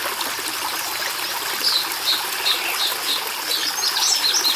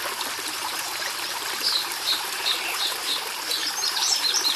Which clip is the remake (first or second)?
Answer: second